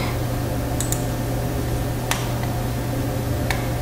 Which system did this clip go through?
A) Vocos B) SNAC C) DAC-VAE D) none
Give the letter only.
D